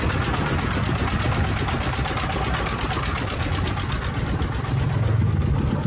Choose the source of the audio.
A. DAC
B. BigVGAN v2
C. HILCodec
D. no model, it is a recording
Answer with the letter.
D